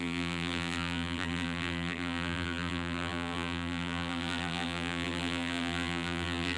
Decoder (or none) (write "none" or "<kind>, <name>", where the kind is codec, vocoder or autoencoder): vocoder, BigVGAN v2